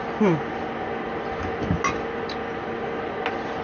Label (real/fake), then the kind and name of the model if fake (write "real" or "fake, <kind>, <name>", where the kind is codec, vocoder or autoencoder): real